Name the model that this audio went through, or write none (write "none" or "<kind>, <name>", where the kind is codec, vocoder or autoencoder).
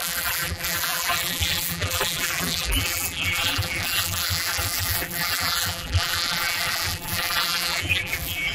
vocoder, BigVGAN v2